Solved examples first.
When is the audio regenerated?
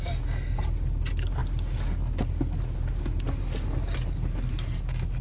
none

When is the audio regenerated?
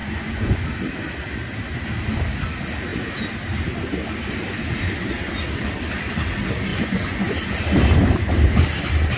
0.0-0.7 (vocoder, Vocos); 6.7-7.3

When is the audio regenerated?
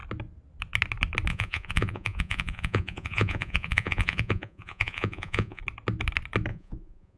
1.3-5.6 (vocoder, Vocos); 6.5-7.2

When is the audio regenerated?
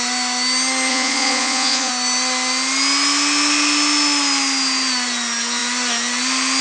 0.9-1.9 (vocoder, Vocos)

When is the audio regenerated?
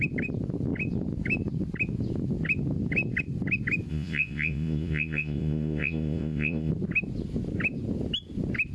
3.9-6.7 (vocoder, Vocos)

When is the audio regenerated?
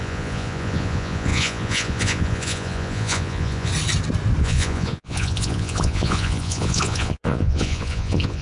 0.0-3.7 (vocoder, Vocos); 4.4-8.4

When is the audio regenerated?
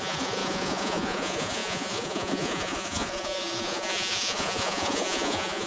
0.0-5.7 (vocoder, Vocos)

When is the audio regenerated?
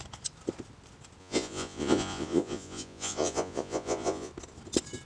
1.2-4.3 (vocoder, Vocos)